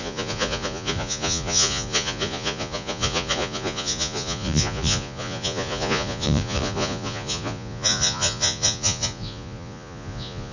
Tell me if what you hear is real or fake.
fake